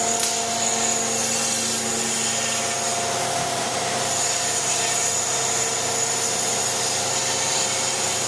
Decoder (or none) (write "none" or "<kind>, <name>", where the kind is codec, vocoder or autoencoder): none